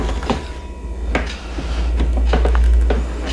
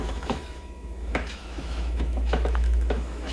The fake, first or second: second